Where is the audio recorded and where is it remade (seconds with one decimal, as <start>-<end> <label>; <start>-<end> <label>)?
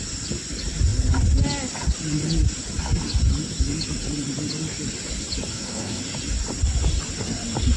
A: 0.0-5.5 recorded; 5.5-6.0 remade; 6.0-7.8 recorded